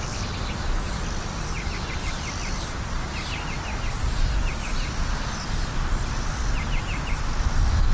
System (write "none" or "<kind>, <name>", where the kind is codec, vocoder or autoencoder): none